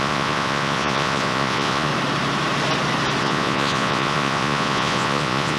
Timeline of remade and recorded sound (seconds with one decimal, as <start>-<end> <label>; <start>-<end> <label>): 0.0-1.9 remade; 1.9-3.2 recorded; 3.2-5.6 remade